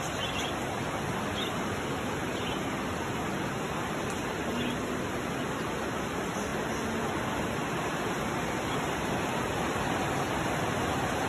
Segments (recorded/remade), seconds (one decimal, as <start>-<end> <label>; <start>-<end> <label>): 0.0-11.3 recorded